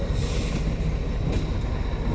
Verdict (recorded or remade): recorded